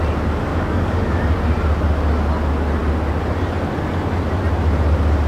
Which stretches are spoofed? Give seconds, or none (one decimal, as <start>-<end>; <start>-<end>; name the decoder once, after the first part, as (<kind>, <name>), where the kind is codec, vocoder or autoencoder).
0.5-1.2 (codec, DAC)